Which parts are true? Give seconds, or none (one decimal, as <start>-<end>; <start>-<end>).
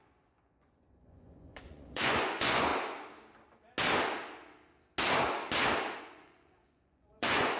2.7-6.0